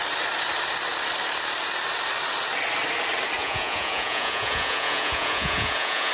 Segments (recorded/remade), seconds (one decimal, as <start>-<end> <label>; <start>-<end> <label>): 0.0-3.4 recorded; 3.4-6.1 remade